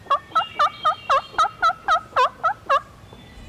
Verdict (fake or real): real